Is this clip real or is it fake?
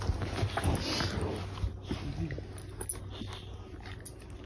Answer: real